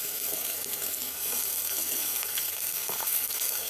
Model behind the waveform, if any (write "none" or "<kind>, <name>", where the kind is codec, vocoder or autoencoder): codec, SNAC